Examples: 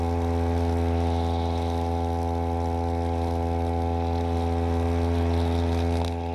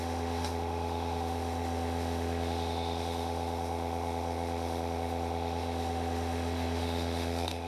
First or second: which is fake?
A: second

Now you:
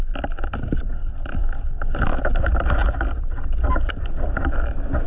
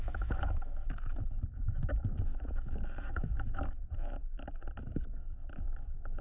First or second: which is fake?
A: second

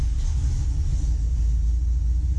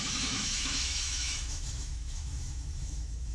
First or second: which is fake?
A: second